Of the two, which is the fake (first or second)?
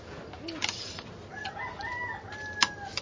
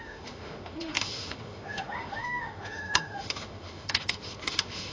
second